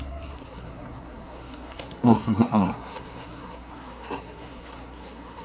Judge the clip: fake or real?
fake